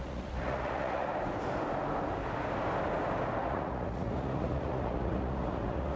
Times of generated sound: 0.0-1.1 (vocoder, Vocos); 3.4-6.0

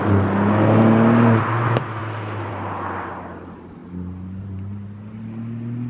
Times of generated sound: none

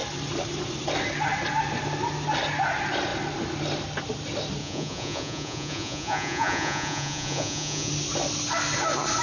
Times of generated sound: 4.6-7.9 (vocoder, Vocos)

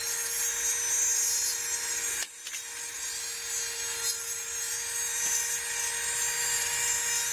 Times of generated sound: none